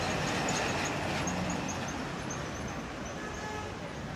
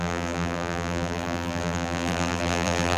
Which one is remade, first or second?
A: second